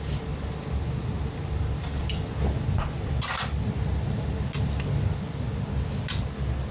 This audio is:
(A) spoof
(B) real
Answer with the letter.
B